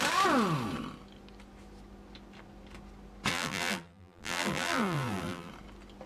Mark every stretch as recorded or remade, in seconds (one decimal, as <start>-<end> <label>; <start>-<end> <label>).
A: 0.0-3.3 recorded; 3.3-5.5 remade; 5.5-6.1 recorded